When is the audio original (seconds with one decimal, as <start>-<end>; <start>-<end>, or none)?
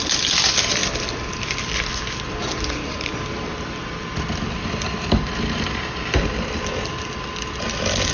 0.0-8.1